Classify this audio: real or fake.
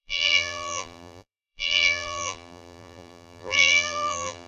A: fake